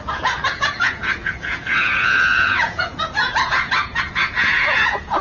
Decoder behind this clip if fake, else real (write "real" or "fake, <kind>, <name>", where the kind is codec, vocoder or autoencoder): fake, vocoder, Vocos